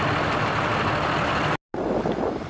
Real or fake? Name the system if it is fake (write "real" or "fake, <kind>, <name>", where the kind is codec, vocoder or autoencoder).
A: real